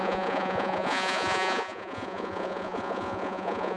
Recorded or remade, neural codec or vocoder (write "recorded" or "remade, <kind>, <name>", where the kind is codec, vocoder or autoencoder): remade, vocoder, Vocos